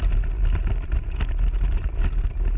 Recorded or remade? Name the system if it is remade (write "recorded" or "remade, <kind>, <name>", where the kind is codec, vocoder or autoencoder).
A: recorded